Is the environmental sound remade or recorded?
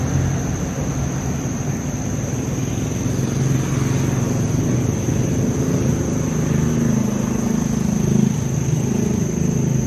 recorded